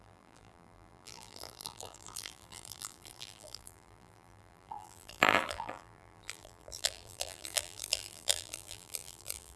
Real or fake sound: fake